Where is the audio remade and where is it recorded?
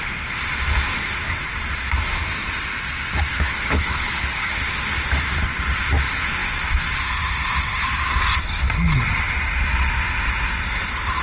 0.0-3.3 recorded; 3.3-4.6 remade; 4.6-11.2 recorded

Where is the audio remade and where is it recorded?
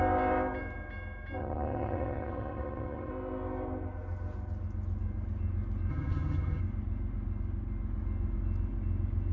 0.0-1.4 recorded; 1.4-3.1 remade; 3.1-5.9 recorded; 5.9-6.6 remade; 6.6-9.3 recorded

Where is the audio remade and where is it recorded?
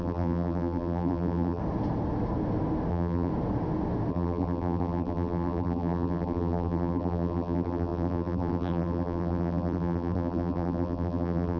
0.0-1.6 remade; 1.6-2.9 recorded; 2.9-3.3 remade; 3.3-4.1 recorded; 4.1-11.6 remade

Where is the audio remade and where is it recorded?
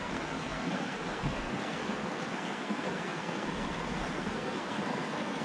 0.0-5.4 remade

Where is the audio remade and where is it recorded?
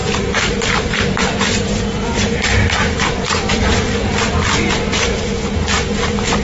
0.0-3.8 remade; 3.8-6.4 recorded